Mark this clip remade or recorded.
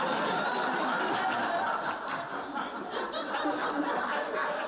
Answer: recorded